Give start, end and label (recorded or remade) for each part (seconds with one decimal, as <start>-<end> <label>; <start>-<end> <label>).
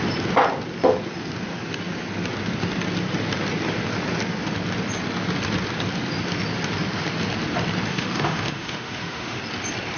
0.0-7.9 recorded; 7.9-9.4 remade; 9.4-10.0 recorded